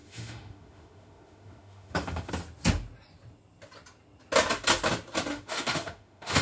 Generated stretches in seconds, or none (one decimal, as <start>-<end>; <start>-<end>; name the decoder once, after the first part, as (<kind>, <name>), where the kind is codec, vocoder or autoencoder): 0.0-2.3 (autoencoder, DAC-VAE); 5.3-6.4